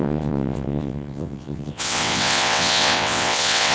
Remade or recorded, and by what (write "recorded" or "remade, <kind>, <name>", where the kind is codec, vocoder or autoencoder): remade, vocoder, WaveNeXt